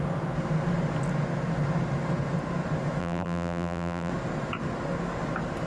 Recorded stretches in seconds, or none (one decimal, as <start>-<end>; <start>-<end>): 0.0-3.0; 4.1-5.7